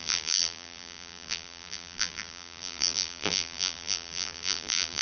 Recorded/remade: remade